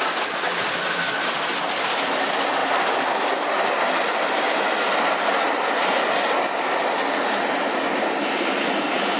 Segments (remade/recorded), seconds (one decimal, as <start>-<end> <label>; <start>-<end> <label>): 0.0-9.2 recorded